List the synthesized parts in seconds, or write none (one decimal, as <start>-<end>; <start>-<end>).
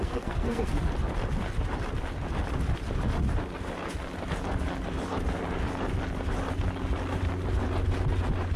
0.0-0.7